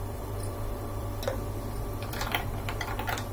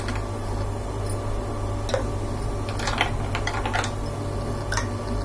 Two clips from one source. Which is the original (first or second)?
second